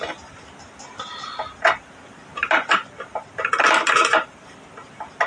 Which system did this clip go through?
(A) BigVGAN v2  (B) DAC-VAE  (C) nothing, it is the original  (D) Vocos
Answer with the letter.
C